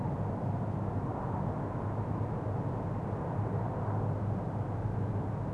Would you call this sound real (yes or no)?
yes